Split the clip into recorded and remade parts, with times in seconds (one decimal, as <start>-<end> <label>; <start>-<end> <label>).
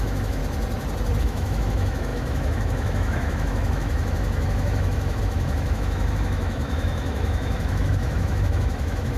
0.0-0.4 remade; 0.4-1.2 recorded; 1.2-9.2 remade